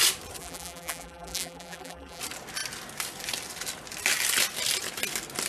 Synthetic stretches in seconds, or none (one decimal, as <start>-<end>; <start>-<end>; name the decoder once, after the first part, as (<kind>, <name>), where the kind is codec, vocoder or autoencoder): 0.4-2.2 (vocoder, BigVGAN v2)